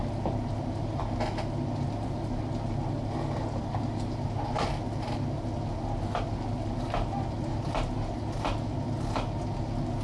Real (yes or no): yes